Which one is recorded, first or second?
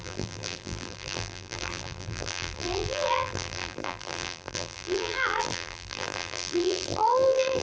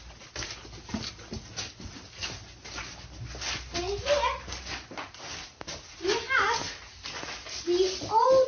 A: second